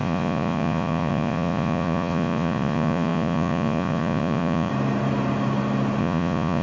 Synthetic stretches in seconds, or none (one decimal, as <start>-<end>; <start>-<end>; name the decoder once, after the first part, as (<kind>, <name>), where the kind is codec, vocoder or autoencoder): 0.0-4.7 (vocoder, Vocos); 6.0-6.6